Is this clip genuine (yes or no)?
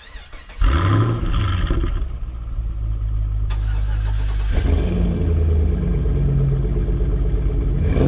yes